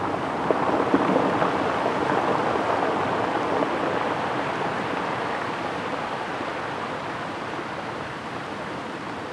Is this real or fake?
real